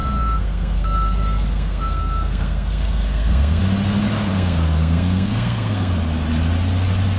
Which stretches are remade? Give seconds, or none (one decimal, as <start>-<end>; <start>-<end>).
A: 0.0-3.6; 4.3-5.9